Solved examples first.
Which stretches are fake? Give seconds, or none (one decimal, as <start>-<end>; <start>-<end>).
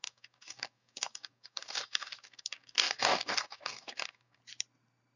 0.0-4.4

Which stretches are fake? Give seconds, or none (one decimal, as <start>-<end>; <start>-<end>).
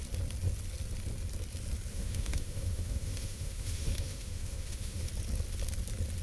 1.9-5.1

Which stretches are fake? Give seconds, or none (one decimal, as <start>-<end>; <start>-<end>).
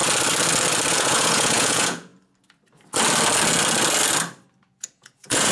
0.9-2.1; 4.6-5.5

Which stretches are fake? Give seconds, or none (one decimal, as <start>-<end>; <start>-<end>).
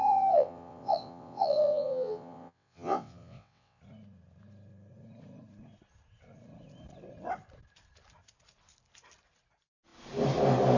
0.0-3.8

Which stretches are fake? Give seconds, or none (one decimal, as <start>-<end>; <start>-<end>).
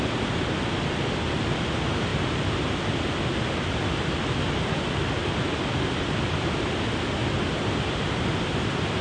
none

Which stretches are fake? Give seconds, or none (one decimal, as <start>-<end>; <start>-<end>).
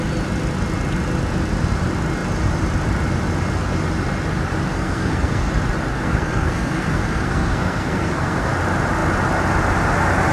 4.7-5.5; 5.9-8.5